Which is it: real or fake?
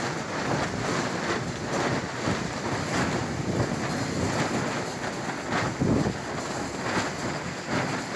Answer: real